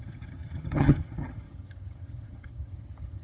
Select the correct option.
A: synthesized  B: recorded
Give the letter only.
A